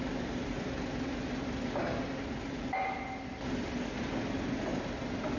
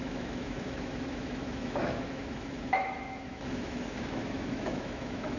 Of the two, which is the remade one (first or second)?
second